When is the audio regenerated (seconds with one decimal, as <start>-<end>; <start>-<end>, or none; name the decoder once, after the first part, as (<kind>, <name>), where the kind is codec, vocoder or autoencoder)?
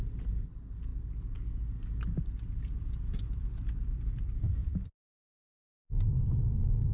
none